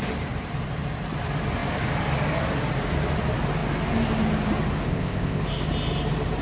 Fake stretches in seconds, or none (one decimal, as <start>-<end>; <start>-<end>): 4.9-5.4